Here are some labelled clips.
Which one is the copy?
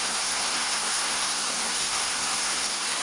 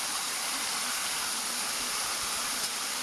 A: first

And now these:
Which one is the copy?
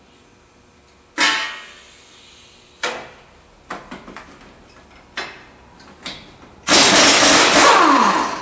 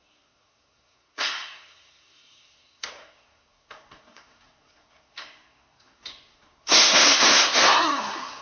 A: second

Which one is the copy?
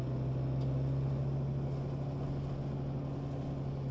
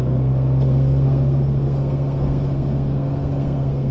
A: second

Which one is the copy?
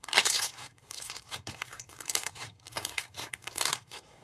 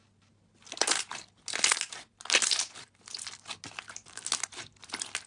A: first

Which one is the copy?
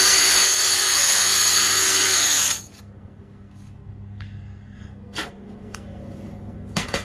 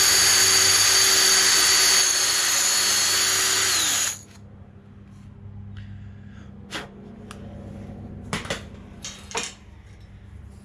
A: first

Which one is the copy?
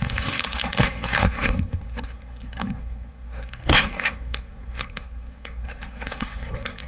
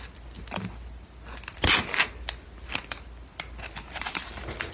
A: first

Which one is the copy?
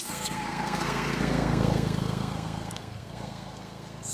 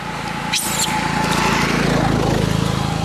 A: first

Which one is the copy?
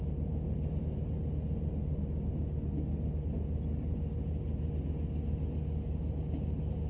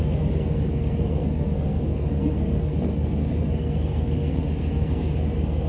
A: second